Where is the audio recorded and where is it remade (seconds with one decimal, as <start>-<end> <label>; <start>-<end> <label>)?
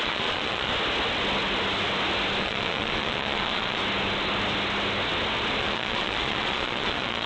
0.0-0.7 remade; 0.7-2.4 recorded; 2.4-3.8 remade; 3.8-5.6 recorded; 5.6-7.3 remade